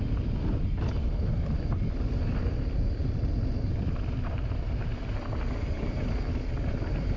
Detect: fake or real real